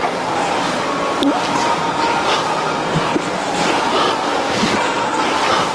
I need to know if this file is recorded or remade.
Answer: recorded